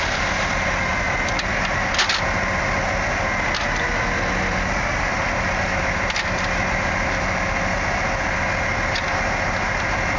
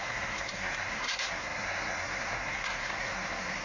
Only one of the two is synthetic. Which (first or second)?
second